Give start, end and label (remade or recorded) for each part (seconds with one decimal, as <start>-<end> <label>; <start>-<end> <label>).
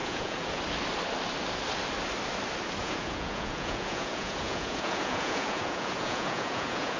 0.0-0.6 remade; 0.6-2.8 recorded; 2.8-7.0 remade